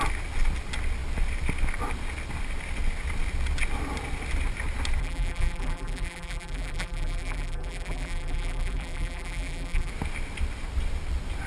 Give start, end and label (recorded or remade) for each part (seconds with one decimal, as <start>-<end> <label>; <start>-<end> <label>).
0.0-5.0 recorded; 5.0-9.9 remade; 9.9-11.5 recorded